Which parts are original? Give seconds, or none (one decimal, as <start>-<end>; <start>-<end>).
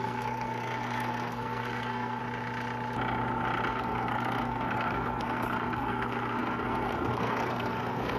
2.2-3.7